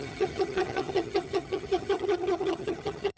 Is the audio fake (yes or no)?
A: yes